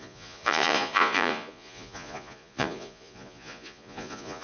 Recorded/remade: remade